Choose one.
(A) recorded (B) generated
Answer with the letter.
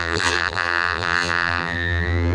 B